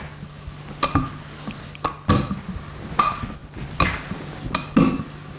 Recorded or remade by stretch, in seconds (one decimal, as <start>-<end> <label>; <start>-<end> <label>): 0.0-5.4 recorded